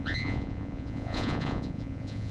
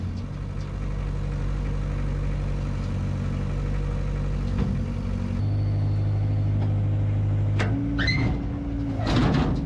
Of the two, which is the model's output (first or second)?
first